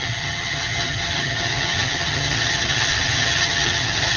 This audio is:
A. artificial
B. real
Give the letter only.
A